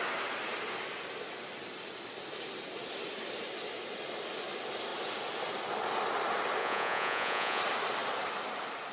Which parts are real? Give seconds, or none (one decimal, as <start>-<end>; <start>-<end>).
0.0-6.6; 7.6-8.9